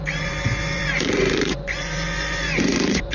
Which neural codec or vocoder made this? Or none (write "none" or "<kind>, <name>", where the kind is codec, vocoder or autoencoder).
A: vocoder, Vocos